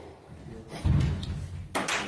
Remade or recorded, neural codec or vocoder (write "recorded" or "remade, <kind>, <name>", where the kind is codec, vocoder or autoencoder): recorded